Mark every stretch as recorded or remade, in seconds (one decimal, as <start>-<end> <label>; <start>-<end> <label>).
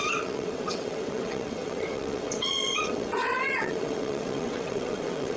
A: 0.0-5.4 remade